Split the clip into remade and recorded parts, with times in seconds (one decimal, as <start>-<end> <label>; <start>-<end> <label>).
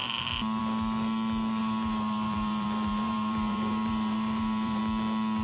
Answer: 0.0-1.6 recorded; 1.6-4.8 remade; 4.8-5.4 recorded